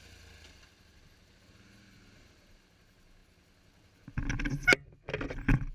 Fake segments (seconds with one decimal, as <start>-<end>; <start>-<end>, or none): none